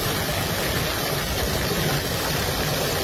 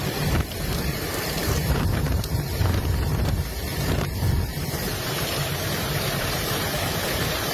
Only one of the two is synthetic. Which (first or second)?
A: second